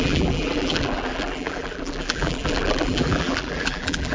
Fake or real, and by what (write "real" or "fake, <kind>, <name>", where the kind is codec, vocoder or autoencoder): fake, vocoder, BigVGAN v2